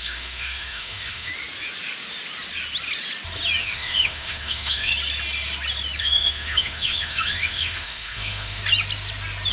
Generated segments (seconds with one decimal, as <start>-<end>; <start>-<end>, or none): 0.0-1.3; 3.6-4.9; 6.0-8.6

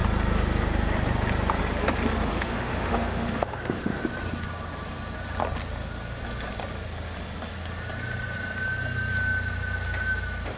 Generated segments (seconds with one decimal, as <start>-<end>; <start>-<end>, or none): 2.3-4.0

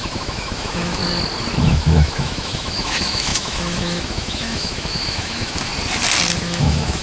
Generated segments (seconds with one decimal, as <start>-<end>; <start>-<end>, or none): 0.0-1.0; 1.6-5.7; 6.3-7.0